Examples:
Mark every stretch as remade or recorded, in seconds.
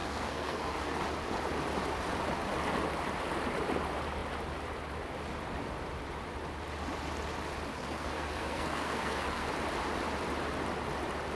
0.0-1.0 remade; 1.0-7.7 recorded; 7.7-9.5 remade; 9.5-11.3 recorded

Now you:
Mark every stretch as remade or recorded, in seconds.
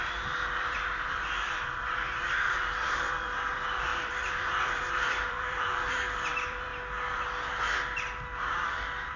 0.0-6.7 remade; 6.7-8.5 recorded; 8.5-9.2 remade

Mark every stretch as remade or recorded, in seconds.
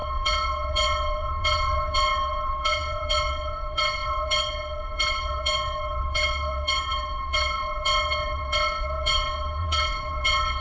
0.0-10.6 remade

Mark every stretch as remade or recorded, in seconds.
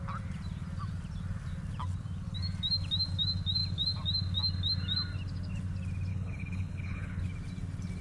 0.0-6.1 recorded; 6.1-7.2 remade; 7.2-8.0 recorded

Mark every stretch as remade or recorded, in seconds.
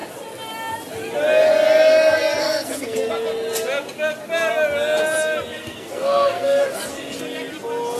0.0-2.4 recorded; 2.4-3.1 remade; 3.1-5.6 recorded; 5.6-7.2 remade; 7.2-8.0 recorded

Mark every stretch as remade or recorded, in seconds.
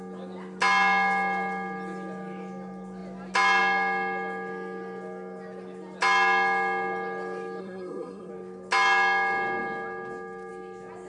0.0-7.6 recorded; 7.6-8.3 remade; 8.3-11.1 recorded